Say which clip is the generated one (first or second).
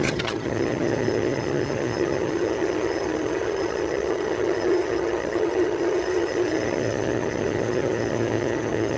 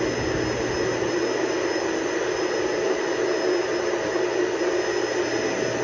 first